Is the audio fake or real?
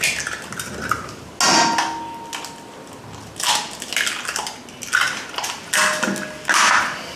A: real